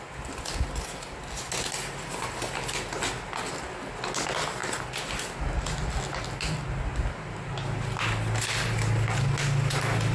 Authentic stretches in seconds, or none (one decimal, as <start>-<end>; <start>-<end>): 0.0-10.1